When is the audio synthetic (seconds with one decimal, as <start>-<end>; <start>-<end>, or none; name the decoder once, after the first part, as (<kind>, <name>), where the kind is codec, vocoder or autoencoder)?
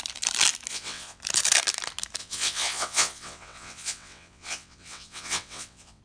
0.7-1.2 (vocoder, WaveNeXt); 2.2-6.0